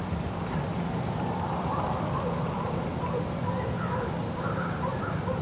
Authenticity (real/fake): fake